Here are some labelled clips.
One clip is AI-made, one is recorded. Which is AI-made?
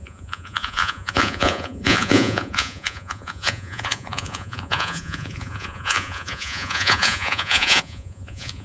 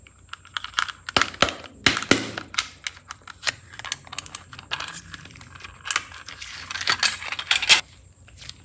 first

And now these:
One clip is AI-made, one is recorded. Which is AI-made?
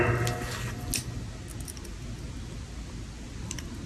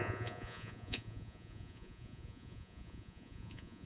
second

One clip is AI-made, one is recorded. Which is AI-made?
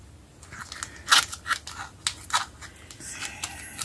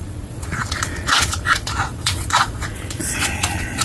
second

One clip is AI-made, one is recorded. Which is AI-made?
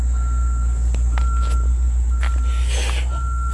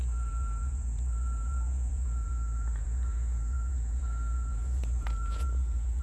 second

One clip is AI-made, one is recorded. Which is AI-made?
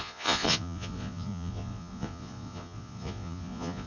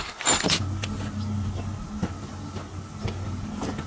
first